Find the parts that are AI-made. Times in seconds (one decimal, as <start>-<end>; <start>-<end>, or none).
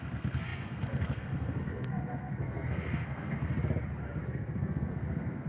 0.0-3.5; 4.2-5.5